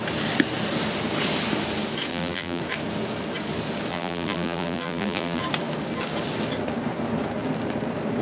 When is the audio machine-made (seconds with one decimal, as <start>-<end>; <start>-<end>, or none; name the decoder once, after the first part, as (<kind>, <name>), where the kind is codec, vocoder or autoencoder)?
2.1-2.6 (vocoder, BigVGAN v2); 3.9-5.4